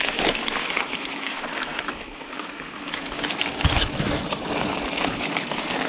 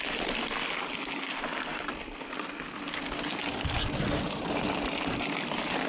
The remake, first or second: first